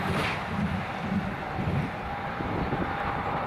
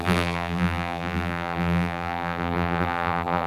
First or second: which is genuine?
first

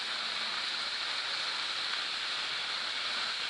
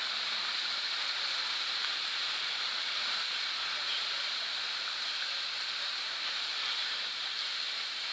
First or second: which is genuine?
first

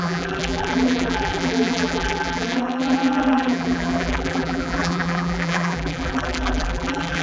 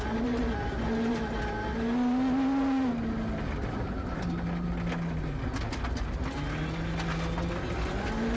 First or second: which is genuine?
second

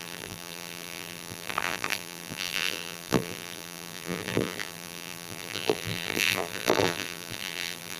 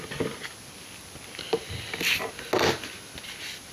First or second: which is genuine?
second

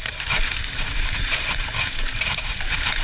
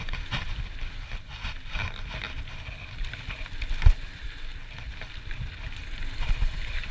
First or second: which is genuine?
second